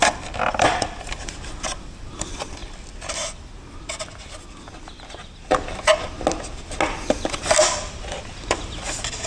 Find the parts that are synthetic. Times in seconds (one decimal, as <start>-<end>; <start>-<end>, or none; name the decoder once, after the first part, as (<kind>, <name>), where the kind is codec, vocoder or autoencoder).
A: 0.0-2.6 (vocoder, BigVGAN v2); 7.4-9.3